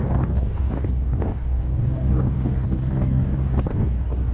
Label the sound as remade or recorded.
remade